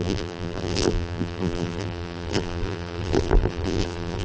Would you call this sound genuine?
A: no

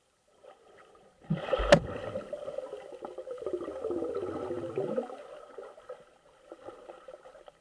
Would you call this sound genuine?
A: yes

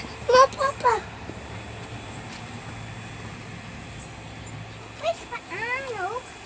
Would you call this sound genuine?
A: yes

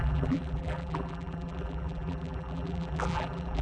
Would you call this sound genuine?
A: no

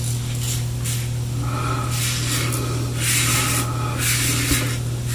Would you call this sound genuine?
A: yes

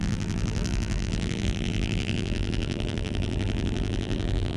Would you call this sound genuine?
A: no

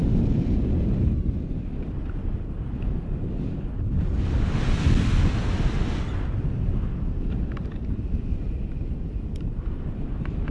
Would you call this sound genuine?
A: yes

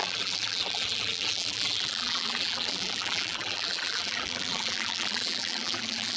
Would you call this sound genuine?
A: no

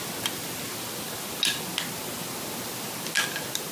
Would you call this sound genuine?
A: yes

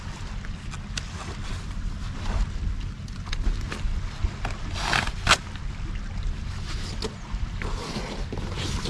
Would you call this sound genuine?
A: yes